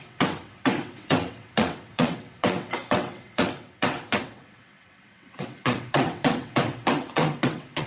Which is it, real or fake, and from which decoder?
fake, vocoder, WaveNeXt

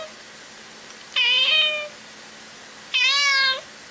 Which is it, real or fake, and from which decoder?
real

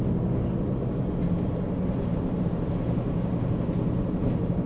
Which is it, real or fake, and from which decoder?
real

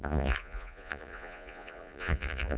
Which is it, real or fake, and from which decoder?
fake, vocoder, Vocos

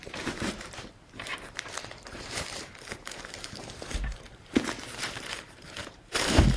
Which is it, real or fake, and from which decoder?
fake, vocoder, BigVGAN v2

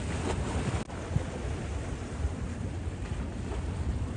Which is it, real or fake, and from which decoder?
real